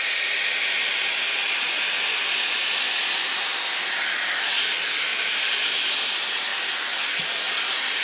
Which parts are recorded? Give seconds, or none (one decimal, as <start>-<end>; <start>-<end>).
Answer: 0.0-5.1; 6.1-8.0